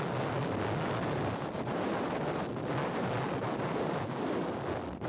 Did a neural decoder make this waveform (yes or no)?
no